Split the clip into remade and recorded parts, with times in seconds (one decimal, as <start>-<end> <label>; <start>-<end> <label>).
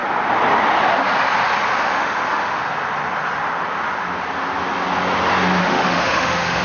0.0-1.8 recorded; 1.8-2.6 remade; 2.6-5.6 recorded; 5.6-6.6 remade